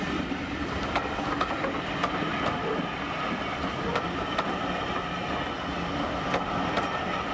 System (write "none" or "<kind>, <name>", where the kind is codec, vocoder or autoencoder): none